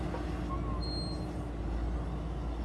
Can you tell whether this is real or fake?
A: real